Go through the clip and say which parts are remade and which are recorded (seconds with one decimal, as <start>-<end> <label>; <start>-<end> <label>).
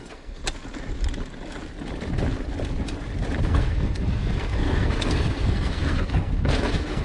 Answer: 0.0-0.4 remade; 0.4-3.4 recorded; 3.4-7.0 remade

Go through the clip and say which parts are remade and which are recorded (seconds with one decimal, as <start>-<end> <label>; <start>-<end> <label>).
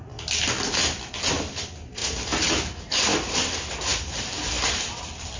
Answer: 0.0-5.4 recorded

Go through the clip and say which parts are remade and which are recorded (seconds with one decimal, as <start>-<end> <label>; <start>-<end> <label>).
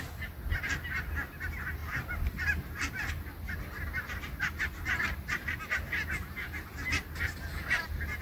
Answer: 0.0-8.2 recorded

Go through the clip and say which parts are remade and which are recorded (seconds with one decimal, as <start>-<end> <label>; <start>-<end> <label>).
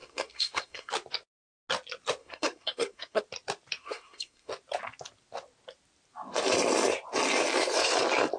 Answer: 0.0-0.9 remade; 0.9-2.2 recorded; 2.2-3.2 remade; 3.2-3.8 recorded; 3.8-4.5 remade; 4.5-8.4 recorded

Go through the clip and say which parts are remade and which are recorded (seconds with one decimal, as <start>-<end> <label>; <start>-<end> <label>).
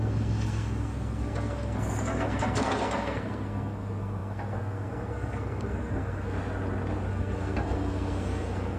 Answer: 0.0-6.4 remade; 6.4-7.1 recorded; 7.1-8.8 remade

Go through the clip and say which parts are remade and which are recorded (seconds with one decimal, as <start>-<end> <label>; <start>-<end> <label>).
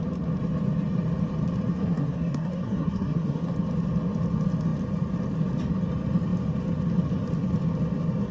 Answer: 0.0-1.7 recorded; 1.7-3.5 remade; 3.5-8.3 recorded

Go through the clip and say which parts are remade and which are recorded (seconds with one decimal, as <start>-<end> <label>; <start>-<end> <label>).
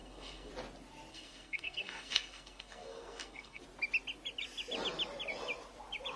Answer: 0.0-0.5 remade; 0.5-1.1 recorded; 1.1-3.6 remade; 3.6-6.2 recorded